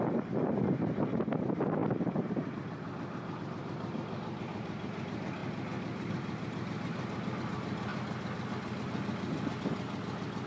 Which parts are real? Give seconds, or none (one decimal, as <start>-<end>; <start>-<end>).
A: none

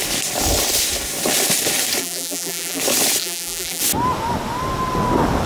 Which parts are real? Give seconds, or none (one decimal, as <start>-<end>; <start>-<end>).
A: 0.0-2.0; 2.8-3.2; 3.8-5.5

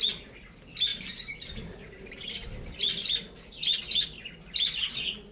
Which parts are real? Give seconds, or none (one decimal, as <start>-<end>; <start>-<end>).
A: 0.0-0.9; 2.8-5.3

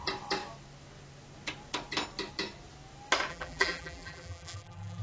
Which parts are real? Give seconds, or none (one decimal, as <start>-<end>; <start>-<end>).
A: 0.0-3.3

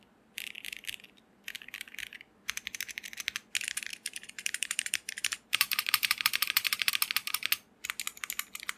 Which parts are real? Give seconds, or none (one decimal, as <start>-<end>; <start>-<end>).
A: 0.0-3.9; 6.9-8.8

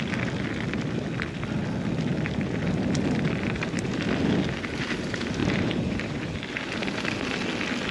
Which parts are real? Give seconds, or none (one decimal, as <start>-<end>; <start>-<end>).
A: 0.0-5.4; 6.3-7.9